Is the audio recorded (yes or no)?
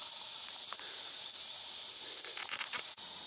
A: no